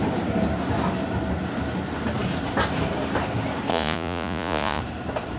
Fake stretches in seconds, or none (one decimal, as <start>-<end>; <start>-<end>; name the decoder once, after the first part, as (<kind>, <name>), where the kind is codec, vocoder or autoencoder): 3.7-4.8 (vocoder, Vocos)